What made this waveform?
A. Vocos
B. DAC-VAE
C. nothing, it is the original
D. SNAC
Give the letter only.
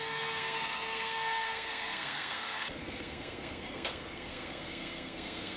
D